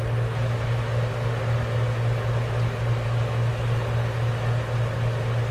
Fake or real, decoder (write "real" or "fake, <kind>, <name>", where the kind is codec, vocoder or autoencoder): real